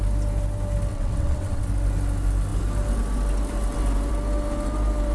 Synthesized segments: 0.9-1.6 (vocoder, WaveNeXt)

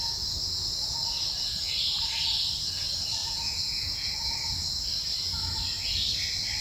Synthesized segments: 3.2-4.1 (vocoder, Vocos)

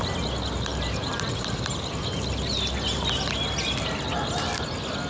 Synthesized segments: 0.7-1.6 (vocoder, BigVGAN v2)

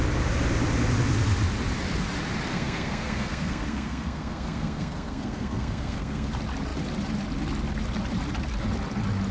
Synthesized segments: 2.5-6.3 (codec, SNAC)

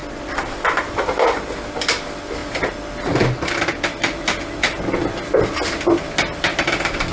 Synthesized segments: none